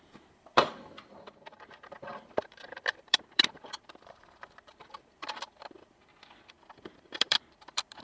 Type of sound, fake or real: fake